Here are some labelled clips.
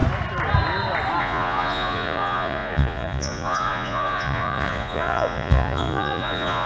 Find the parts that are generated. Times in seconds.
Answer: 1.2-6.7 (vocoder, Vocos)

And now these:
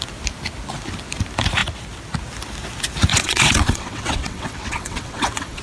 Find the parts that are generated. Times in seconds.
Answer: 3.1-5.6 (vocoder, WaveNeXt)